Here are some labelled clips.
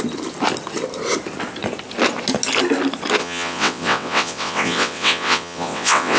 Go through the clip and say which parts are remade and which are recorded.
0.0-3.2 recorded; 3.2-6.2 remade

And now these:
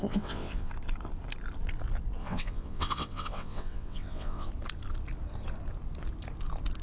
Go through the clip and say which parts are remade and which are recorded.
0.0-0.7 remade; 0.7-2.2 recorded; 2.2-4.5 remade; 4.5-6.8 recorded

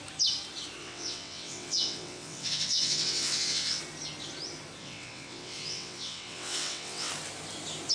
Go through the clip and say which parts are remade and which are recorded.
0.0-0.8 recorded; 0.8-3.8 remade; 3.8-4.8 recorded; 4.8-7.1 remade; 7.1-7.9 recorded

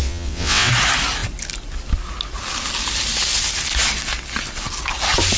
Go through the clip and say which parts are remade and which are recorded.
0.0-0.7 remade; 0.7-5.4 recorded

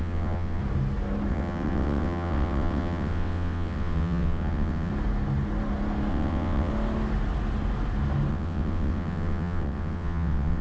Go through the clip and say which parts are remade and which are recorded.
0.0-0.6 remade; 0.6-1.3 recorded; 1.3-4.9 remade; 4.9-6.1 recorded; 6.1-6.7 remade; 6.7-8.3 recorded; 8.3-10.6 remade

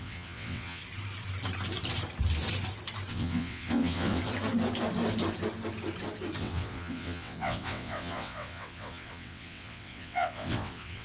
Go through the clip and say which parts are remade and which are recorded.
0.0-0.8 remade; 0.8-3.1 recorded; 3.1-4.2 remade; 4.2-6.4 recorded; 6.4-11.0 remade